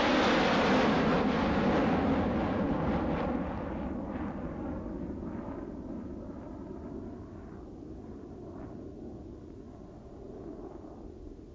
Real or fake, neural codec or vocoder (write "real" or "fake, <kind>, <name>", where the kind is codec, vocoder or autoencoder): real